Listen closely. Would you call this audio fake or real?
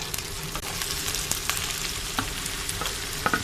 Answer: real